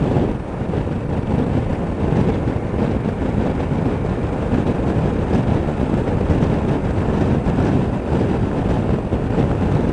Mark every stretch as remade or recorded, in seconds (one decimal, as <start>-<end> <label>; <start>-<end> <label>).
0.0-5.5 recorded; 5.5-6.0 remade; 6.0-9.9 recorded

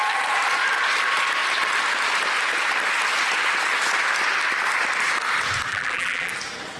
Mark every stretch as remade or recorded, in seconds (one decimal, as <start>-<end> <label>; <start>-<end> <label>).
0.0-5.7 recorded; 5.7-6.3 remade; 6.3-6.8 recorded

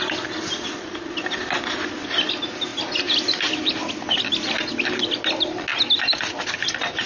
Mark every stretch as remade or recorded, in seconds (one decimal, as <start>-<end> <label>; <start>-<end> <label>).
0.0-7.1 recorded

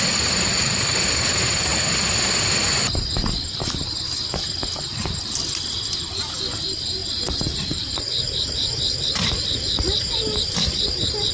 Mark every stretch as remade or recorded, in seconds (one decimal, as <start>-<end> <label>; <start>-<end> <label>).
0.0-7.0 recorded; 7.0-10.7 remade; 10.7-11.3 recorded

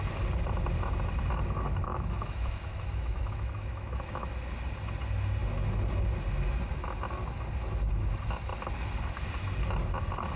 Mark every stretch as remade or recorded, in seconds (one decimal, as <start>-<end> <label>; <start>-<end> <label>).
0.0-1.9 recorded; 1.9-4.3 remade; 4.3-10.4 recorded

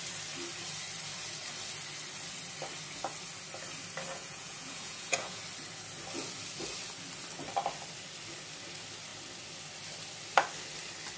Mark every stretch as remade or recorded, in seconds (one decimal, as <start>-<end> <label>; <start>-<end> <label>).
0.0-4.1 recorded; 4.1-5.4 remade; 5.4-11.2 recorded

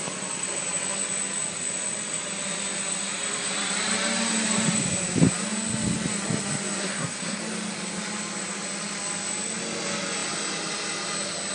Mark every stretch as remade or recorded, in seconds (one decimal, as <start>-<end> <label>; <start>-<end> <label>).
0.0-6.8 recorded; 6.8-7.4 remade; 7.4-11.5 recorded

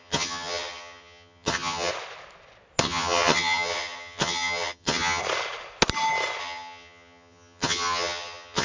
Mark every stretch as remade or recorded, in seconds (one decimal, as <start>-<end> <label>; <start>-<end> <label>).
0.0-1.9 remade; 1.9-2.8 recorded; 2.8-5.2 remade; 5.2-6.4 recorded; 6.4-8.6 remade